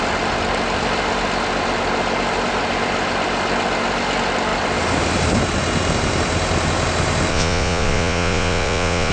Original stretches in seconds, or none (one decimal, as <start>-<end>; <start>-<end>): 0.0-7.3